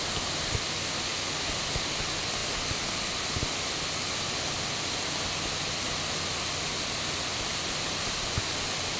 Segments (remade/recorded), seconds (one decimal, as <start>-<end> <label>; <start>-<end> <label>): 0.0-9.0 recorded

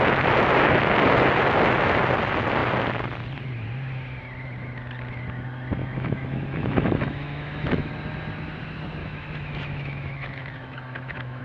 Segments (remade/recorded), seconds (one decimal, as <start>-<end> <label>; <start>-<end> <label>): 0.0-5.8 recorded; 5.8-7.9 remade; 7.9-9.0 recorded; 9.0-11.4 remade

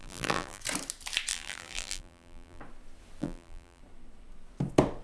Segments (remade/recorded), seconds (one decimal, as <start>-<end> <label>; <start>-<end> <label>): 0.0-0.6 remade; 0.6-1.3 recorded; 1.3-2.6 remade; 2.6-3.2 recorded; 3.2-3.8 remade; 3.8-5.0 recorded

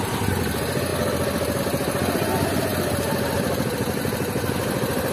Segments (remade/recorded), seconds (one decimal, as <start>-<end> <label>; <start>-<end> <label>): 0.0-5.1 recorded

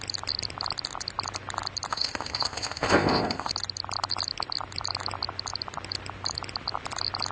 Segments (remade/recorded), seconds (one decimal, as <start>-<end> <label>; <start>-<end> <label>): 0.0-1.9 recorded; 1.9-3.5 remade; 3.5-7.3 recorded

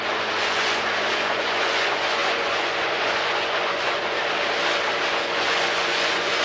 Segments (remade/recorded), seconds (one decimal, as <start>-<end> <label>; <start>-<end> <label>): 0.0-4.2 remade; 4.2-5.1 recorded; 5.1-6.4 remade